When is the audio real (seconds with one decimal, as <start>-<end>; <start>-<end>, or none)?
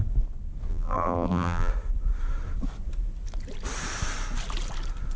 0.0-0.7; 1.7-5.2